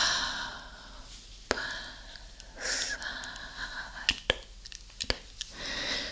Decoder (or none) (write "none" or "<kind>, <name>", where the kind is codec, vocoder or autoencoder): none